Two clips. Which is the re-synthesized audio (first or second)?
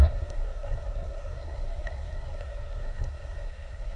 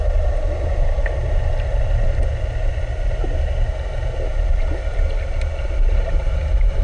first